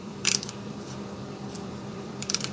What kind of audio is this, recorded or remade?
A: remade